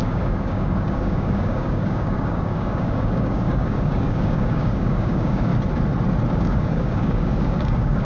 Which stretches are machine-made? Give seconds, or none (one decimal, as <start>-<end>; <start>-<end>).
0.0-5.5; 6.3-8.0